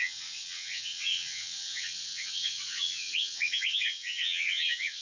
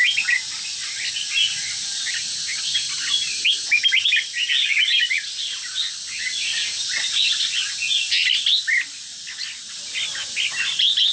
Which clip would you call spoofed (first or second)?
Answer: first